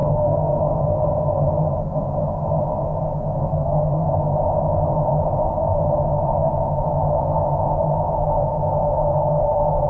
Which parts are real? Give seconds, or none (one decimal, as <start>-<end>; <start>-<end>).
0.6-3.5; 4.1-9.9